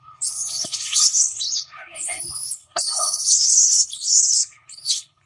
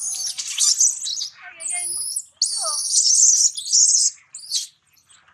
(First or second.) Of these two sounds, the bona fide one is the second